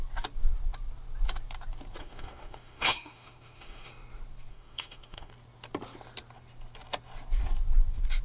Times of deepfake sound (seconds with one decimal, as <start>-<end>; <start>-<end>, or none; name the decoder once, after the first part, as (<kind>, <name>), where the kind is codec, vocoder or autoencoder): 2.0-3.9 (autoencoder, DAC-VAE); 4.5-5.3